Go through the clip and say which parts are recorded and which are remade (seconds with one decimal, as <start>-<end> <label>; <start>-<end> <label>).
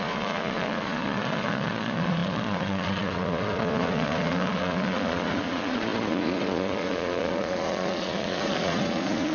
0.0-9.3 remade